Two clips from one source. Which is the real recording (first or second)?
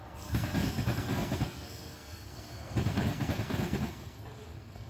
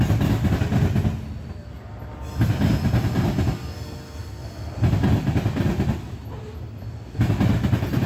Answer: second